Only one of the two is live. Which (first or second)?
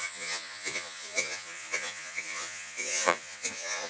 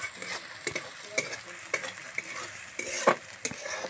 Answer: second